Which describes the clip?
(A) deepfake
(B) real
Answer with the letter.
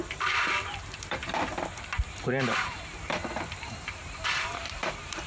A